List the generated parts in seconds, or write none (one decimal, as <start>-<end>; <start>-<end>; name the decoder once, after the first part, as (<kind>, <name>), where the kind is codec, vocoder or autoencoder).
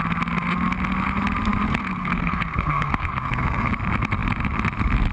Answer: 1.7-3.7 (codec, SNAC)